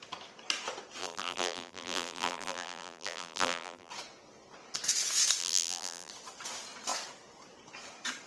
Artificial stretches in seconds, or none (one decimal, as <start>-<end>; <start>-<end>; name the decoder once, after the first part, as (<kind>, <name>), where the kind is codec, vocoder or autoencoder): 1.0-3.9 (vocoder, BigVGAN v2); 5.4-6.1